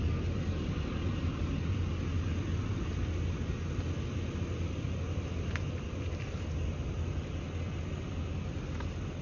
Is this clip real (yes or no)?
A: yes